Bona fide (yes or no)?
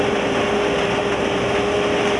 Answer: yes